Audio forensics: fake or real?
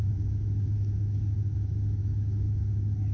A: fake